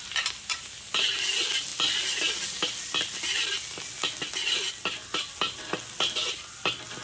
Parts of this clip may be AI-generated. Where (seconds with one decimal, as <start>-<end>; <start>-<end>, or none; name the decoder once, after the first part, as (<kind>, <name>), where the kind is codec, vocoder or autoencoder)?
none